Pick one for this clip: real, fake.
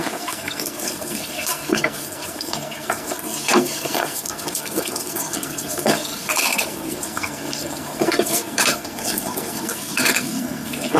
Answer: fake